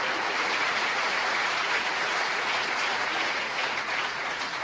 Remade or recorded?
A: remade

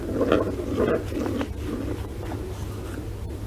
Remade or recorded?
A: recorded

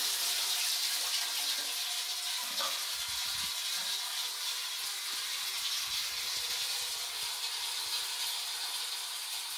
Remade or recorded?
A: recorded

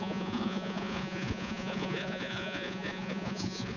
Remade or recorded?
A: remade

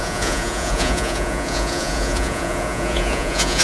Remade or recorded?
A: remade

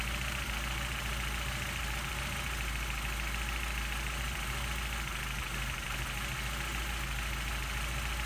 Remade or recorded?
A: recorded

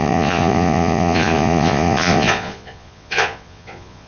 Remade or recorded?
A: remade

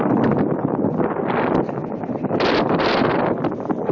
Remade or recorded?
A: recorded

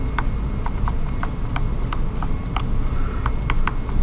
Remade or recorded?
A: recorded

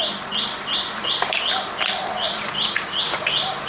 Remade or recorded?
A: recorded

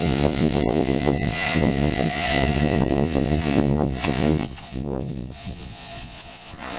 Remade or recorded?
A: remade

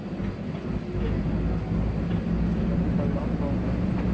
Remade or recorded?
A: recorded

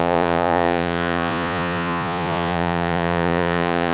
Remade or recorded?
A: remade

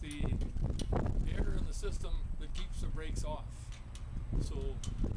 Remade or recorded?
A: recorded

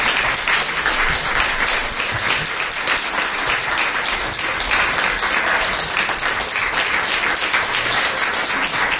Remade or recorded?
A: recorded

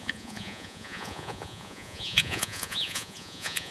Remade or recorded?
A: remade